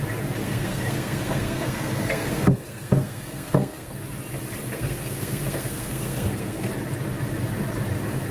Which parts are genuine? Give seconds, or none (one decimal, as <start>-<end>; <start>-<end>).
0.0-0.4; 4.0-4.7; 6.7-8.3